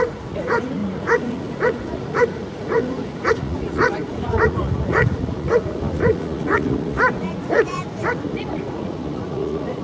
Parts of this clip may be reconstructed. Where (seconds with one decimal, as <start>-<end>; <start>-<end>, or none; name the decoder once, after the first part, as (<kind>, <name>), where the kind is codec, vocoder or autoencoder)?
0.0-9.8 (vocoder, Vocos)